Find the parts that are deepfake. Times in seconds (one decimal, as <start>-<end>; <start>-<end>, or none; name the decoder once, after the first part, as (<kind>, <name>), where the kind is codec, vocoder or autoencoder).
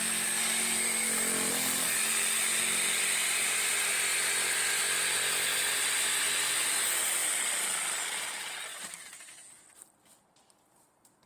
none